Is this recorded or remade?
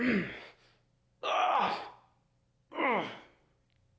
recorded